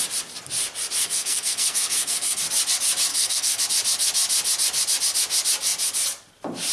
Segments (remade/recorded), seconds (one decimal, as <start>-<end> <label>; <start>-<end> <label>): 0.0-1.0 recorded; 1.0-2.4 remade; 2.4-3.1 recorded; 3.1-3.6 remade; 3.6-6.7 recorded